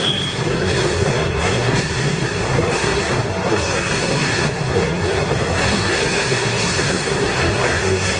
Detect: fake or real fake